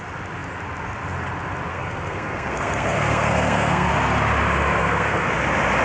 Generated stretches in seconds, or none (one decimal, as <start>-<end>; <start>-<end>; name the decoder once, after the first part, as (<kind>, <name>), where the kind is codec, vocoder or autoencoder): 1.7-3.9 (codec, SNAC); 4.8-5.3